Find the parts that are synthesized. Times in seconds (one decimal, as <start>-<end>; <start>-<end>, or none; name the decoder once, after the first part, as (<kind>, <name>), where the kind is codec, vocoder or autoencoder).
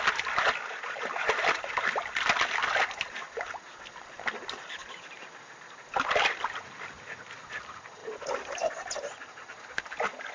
none